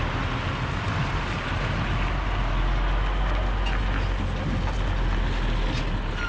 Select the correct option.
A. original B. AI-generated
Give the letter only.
A